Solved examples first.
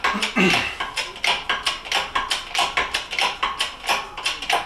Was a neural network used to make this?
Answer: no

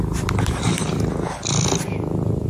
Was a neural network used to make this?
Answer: no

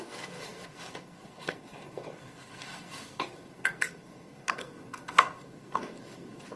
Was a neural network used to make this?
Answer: yes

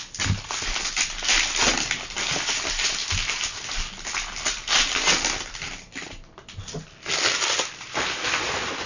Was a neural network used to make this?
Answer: no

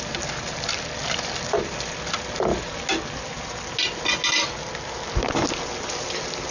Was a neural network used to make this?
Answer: no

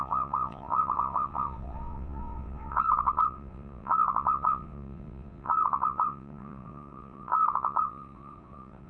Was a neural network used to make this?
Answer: yes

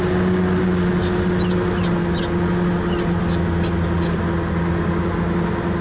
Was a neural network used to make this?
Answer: no